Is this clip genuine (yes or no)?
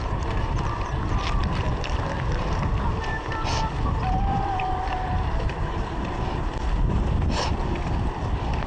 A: no